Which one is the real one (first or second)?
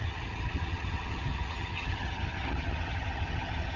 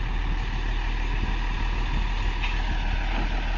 second